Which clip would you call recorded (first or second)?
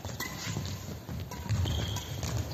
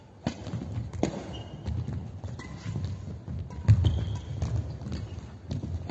second